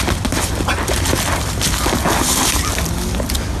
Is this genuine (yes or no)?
yes